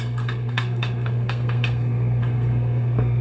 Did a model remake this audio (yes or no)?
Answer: yes